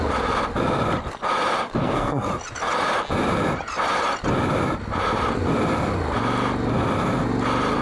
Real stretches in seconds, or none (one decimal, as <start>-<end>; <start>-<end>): 0.0-1.8; 2.3-7.8